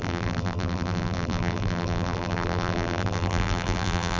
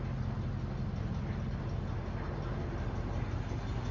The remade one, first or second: first